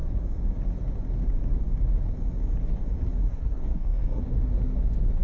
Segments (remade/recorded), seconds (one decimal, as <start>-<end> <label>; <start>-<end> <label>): 0.0-3.3 recorded; 3.3-4.2 remade; 4.2-5.2 recorded